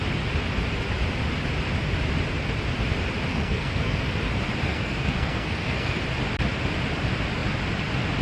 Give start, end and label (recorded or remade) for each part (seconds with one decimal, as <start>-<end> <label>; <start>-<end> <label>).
0.0-3.3 recorded; 3.3-4.1 remade; 4.1-4.7 recorded; 4.7-6.0 remade; 6.0-8.2 recorded